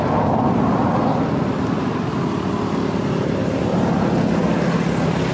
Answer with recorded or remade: recorded